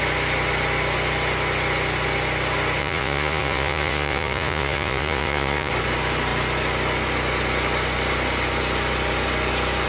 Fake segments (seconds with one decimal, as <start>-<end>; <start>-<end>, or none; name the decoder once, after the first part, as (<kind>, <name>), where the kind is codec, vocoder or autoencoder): 2.8-5.7 (vocoder, Vocos)